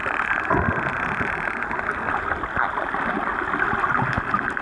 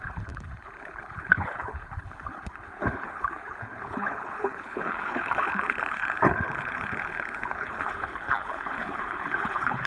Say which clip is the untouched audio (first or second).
first